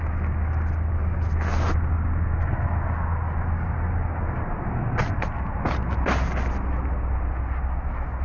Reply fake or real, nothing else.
real